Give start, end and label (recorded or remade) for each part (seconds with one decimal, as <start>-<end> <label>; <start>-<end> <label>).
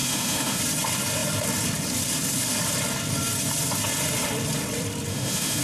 0.0-0.6 remade; 0.6-5.1 recorded; 5.1-5.6 remade